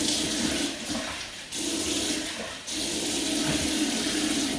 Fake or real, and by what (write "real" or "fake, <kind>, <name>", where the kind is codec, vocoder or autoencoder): real